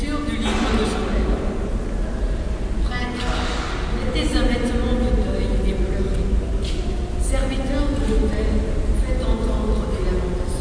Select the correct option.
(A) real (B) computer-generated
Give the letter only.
A